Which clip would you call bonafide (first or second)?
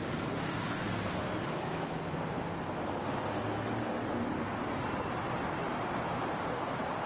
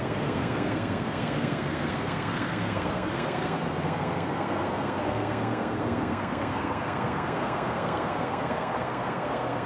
first